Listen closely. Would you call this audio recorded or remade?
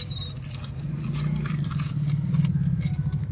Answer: recorded